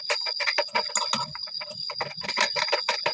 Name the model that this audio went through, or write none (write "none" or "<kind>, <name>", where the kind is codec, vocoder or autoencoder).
none